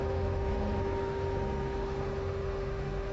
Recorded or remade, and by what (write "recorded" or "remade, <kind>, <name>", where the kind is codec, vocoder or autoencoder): remade, autoencoder, DAC-VAE